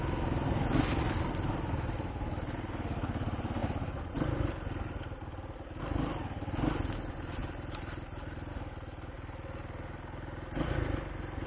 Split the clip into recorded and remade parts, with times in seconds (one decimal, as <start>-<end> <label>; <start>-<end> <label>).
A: 0.0-7.4 recorded; 7.4-8.5 remade; 8.5-11.5 recorded